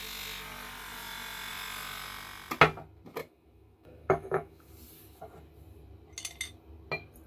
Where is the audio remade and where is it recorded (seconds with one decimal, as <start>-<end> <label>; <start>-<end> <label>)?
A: 0.0-3.2 recorded; 3.2-4.7 remade; 4.7-7.3 recorded

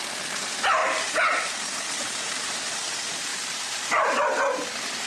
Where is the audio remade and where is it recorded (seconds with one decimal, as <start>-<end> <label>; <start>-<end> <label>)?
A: 0.0-5.1 recorded

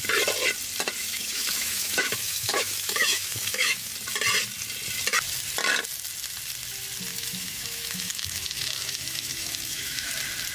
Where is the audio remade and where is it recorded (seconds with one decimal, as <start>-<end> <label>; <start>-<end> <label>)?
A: 0.0-1.0 recorded; 1.0-3.9 remade; 3.9-7.1 recorded; 7.1-10.1 remade; 10.1-10.5 recorded

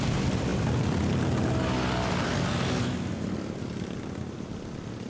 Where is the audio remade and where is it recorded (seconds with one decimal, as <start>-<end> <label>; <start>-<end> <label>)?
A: 0.0-5.1 recorded

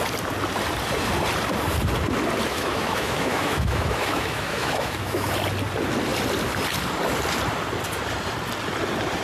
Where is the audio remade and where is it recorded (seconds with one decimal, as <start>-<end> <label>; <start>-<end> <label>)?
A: 0.0-2.5 recorded; 2.5-5.3 remade; 5.3-9.2 recorded